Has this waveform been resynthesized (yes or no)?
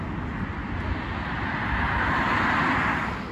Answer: no